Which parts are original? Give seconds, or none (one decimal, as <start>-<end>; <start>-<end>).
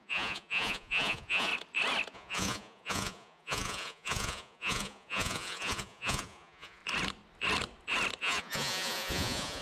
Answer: 1.5-2.1; 6.8-8.2